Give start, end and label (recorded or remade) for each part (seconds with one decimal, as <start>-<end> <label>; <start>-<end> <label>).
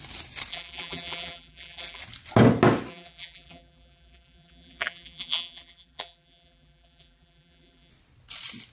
0.0-0.5 recorded; 0.5-2.0 remade; 2.0-2.9 recorded; 2.9-7.9 remade; 7.9-8.7 recorded